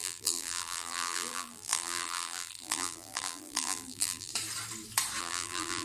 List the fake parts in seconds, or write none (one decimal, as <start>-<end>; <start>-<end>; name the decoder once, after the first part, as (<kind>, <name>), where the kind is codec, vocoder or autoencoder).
0.0-4.3 (vocoder, BigVGAN v2); 5.2-5.8

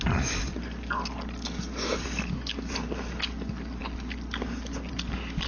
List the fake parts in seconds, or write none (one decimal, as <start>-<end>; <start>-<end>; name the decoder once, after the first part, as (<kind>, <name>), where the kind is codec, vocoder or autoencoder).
none

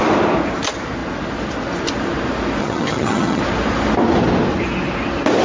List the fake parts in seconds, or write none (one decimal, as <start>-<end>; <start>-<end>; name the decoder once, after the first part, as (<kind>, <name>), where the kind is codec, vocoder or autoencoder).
2.6-3.4 (vocoder, HiFi-GAN)